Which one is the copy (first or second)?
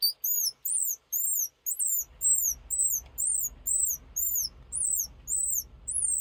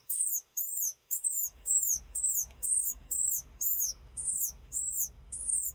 second